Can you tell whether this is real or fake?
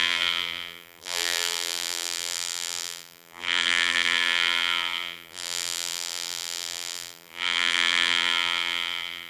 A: fake